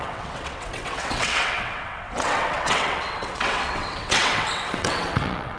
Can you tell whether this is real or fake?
fake